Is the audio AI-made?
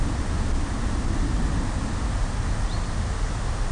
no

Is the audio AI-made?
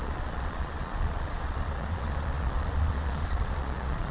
yes